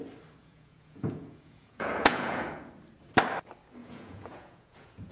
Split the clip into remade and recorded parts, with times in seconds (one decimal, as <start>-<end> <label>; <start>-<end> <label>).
0.0-0.4 recorded; 0.4-2.7 remade; 2.7-3.8 recorded; 3.8-5.1 remade